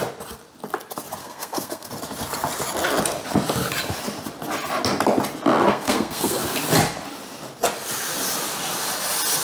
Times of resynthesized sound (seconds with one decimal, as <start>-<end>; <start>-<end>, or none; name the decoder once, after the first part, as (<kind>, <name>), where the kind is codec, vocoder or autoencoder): 1.2-1.9 (codec, SNAC); 5.7-6.4